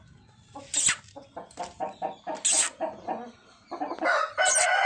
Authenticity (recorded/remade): recorded